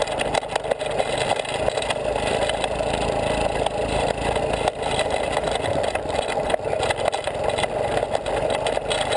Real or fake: real